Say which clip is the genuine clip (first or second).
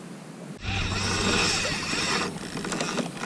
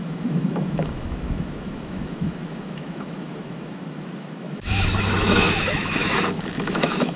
first